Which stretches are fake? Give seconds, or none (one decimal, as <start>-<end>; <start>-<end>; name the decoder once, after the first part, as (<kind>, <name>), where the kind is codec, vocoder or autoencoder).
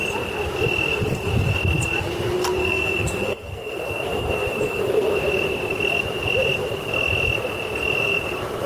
2.6-5.2 (codec, SNAC)